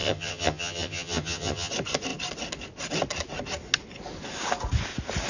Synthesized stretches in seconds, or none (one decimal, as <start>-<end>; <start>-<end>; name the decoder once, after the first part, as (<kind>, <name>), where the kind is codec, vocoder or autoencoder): 0.0-1.7 (vocoder, HiFi-GAN)